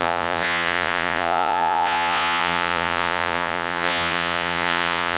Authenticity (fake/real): fake